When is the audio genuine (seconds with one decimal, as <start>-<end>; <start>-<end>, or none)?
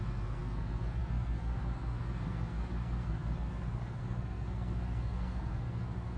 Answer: none